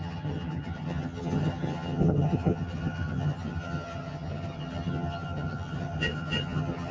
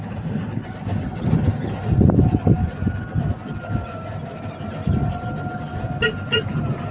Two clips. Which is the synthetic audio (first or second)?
first